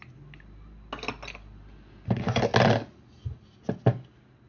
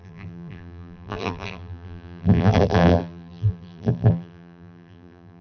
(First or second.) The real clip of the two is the first